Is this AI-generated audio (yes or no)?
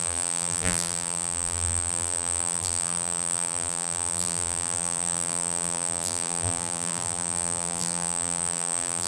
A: yes